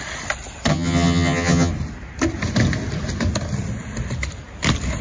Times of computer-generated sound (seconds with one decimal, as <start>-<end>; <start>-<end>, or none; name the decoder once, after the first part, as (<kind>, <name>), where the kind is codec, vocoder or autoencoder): 0.7-1.7 (vocoder, HiFi-GAN)